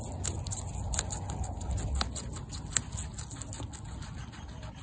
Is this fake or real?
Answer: real